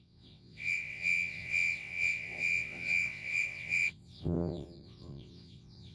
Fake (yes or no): yes